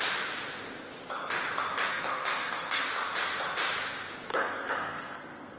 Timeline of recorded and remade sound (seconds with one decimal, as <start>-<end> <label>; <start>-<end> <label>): 0.0-1.9 recorded; 1.9-2.8 remade; 2.8-4.3 recorded; 4.3-5.6 remade